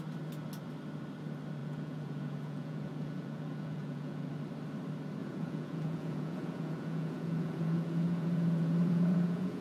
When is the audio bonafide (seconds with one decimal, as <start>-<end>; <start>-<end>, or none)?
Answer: 0.0-1.6; 4.3-5.2